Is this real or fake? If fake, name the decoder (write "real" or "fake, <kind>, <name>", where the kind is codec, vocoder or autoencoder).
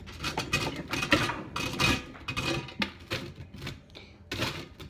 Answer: real